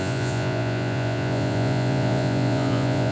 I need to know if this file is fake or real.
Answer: fake